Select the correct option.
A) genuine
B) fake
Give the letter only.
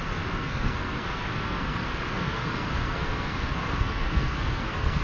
B